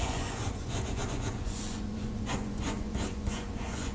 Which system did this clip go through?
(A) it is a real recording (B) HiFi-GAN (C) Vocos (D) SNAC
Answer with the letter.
C